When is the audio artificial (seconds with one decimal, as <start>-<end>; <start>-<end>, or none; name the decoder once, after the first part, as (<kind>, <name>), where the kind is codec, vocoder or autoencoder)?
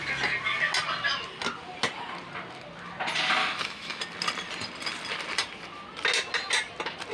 3.4-4.0 (autoencoder, DAC-VAE)